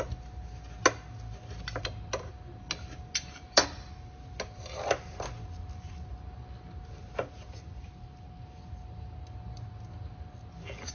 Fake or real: real